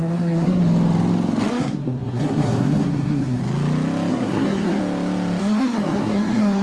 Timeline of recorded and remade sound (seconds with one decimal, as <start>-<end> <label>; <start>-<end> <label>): 0.0-0.6 remade; 0.6-1.5 recorded; 1.5-3.4 remade; 3.4-4.1 recorded; 4.1-4.8 remade; 4.8-5.4 recorded; 5.4-6.6 remade